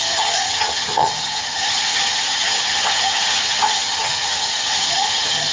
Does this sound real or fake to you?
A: fake